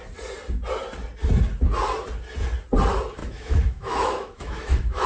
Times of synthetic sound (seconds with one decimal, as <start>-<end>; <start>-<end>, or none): 3.2-5.1